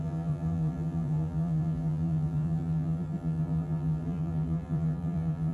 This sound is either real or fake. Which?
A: fake